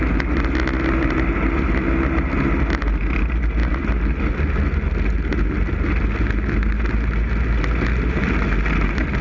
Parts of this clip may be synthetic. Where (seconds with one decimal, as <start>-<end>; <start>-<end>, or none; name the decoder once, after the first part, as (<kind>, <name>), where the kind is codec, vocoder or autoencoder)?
none